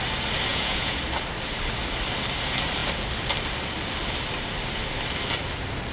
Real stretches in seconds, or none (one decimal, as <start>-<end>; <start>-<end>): 0.0-0.5; 1.0-5.9